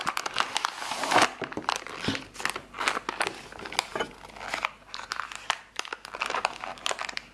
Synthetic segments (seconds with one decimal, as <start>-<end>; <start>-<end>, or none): none

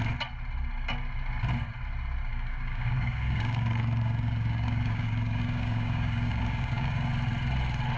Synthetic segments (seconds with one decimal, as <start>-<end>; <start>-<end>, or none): 2.3-7.1

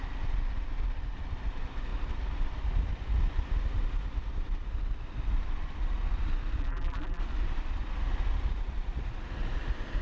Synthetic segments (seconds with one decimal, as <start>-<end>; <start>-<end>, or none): 6.6-7.2